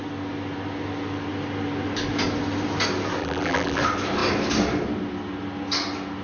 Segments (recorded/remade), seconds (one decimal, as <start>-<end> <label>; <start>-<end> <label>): 0.0-3.2 recorded; 3.2-3.8 remade; 3.8-6.2 recorded